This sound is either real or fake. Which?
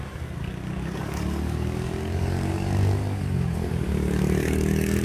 fake